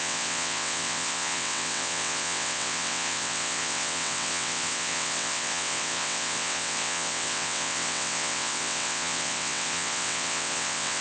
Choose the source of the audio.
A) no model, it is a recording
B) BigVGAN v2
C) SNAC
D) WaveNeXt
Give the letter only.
D